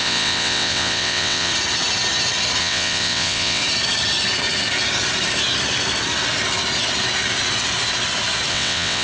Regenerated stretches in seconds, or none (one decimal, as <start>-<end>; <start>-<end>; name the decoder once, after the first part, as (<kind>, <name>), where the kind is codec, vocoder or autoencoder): 0.0-1.5 (vocoder, WaveNeXt); 2.6-3.6; 8.5-9.0